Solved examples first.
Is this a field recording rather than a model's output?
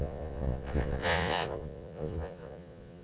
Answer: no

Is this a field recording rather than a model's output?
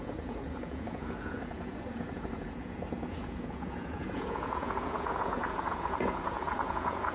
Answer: no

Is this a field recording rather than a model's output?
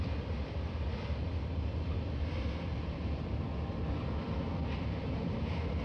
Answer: yes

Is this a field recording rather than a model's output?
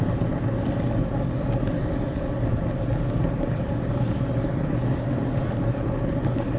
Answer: yes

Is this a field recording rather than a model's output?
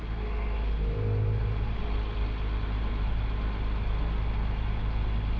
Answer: yes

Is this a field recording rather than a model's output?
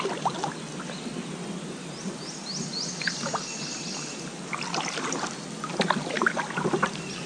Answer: yes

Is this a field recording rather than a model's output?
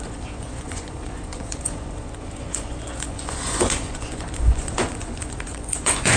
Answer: no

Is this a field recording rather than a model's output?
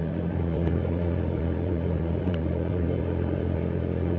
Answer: no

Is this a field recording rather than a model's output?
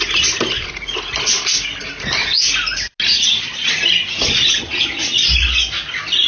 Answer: yes